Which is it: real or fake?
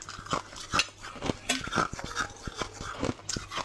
real